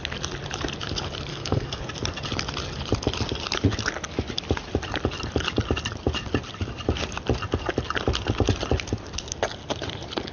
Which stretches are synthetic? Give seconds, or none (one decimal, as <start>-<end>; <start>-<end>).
1.3-1.8